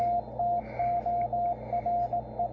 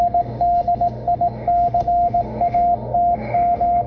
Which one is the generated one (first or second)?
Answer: second